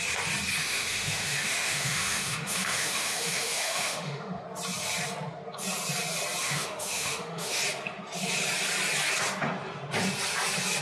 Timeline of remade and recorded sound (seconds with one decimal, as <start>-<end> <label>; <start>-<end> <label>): 0.0-0.6 recorded; 0.6-4.4 remade; 4.4-6.4 recorded; 6.4-7.6 remade; 7.6-10.8 recorded